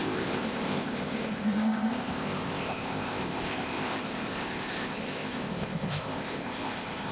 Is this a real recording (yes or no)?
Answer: no